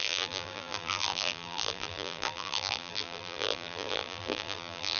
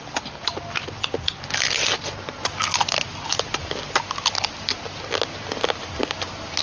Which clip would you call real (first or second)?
second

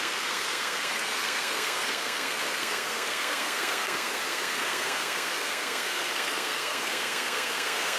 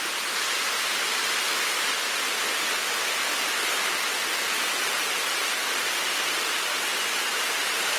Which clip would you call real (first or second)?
second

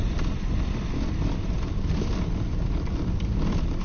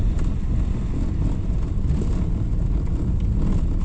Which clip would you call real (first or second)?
second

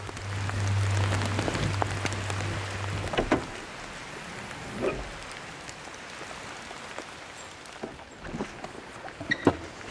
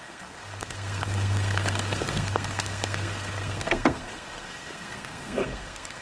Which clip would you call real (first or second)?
first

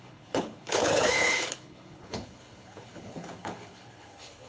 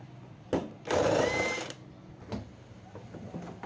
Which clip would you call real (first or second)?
second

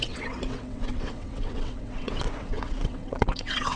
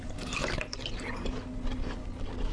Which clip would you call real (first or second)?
second